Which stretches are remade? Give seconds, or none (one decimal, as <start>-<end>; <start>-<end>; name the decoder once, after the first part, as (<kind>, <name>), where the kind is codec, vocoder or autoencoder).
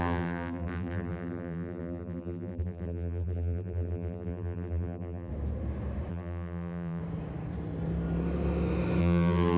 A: 0.0-5.3 (vocoder, BigVGAN v2); 6.1-7.0; 9.0-9.6